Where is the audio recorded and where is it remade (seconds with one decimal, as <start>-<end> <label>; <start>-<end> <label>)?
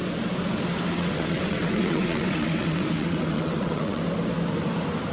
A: 0.0-0.9 recorded; 0.9-4.0 remade; 4.0-5.1 recorded